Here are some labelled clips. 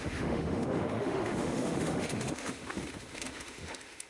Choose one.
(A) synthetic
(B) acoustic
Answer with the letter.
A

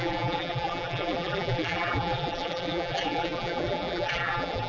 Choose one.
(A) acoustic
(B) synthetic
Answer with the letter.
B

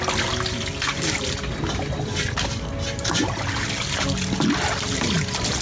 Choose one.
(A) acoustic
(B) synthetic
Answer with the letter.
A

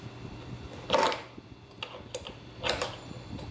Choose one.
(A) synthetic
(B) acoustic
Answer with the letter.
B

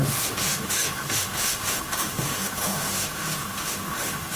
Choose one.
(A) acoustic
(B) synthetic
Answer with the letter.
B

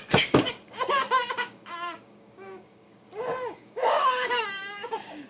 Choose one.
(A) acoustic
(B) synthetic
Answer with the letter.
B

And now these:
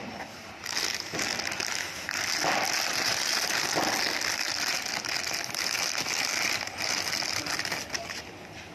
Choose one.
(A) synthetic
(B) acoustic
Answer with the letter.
B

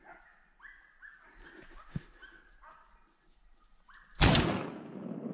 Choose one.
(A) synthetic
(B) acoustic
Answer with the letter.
B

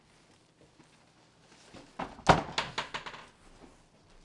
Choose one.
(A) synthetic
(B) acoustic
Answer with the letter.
B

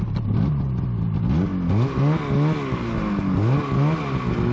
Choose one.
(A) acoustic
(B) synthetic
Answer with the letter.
A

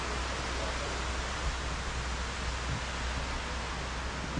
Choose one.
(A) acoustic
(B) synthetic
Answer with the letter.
A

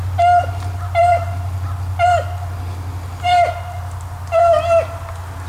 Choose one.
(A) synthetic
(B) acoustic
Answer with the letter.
B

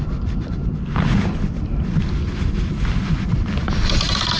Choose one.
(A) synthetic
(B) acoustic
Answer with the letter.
B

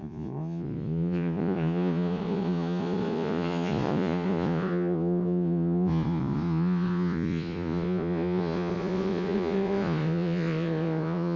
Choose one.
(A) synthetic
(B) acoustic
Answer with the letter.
A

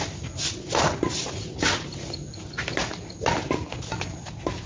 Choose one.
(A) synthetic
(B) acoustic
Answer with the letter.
B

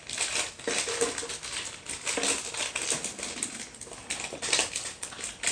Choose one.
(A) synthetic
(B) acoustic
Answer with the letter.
B